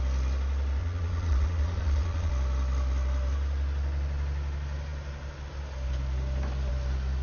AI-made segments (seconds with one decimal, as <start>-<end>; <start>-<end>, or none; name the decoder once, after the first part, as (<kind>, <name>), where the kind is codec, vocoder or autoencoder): 0.8-2.3 (vocoder, Vocos)